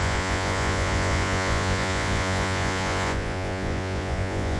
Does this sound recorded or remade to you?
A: remade